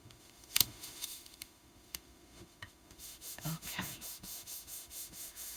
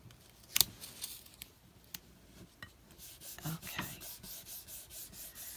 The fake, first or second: first